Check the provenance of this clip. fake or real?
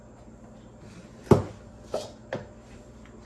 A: real